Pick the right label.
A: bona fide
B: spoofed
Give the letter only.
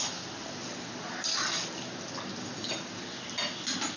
A